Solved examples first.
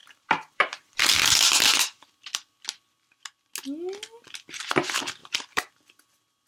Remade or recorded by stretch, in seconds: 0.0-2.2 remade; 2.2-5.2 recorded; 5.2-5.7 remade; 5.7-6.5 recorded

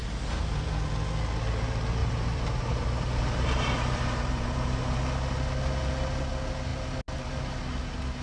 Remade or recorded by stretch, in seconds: 0.0-0.9 remade; 0.9-2.0 recorded; 2.0-5.0 remade; 5.0-8.2 recorded

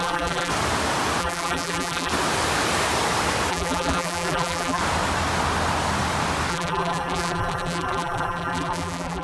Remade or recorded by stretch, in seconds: 0.0-0.5 remade; 0.5-1.2 recorded; 1.2-2.1 remade; 2.1-3.5 recorded; 3.5-4.8 remade; 4.8-6.5 recorded; 6.5-9.2 remade

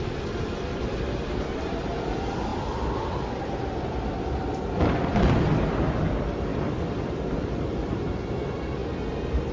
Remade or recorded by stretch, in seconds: 0.0-9.5 recorded

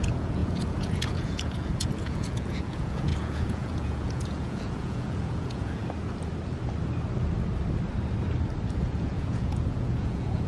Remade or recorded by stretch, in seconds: 0.0-5.8 remade; 5.8-8.7 recorded; 8.7-10.5 remade

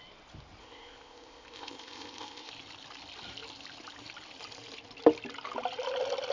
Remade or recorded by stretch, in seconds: 0.0-0.6 recorded; 0.6-2.5 remade; 2.5-6.3 recorded